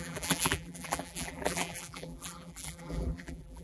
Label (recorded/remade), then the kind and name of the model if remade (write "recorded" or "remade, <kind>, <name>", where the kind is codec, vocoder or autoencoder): remade, vocoder, BigVGAN v2